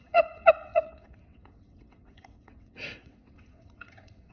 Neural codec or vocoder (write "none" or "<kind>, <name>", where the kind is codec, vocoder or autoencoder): vocoder, WaveNeXt